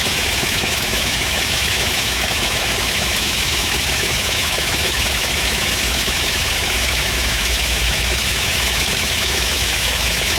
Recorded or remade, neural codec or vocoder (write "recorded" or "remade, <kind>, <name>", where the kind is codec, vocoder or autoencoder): remade, autoencoder, DAC-VAE